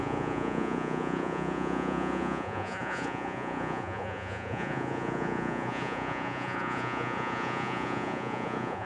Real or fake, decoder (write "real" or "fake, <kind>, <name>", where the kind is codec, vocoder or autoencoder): fake, vocoder, Vocos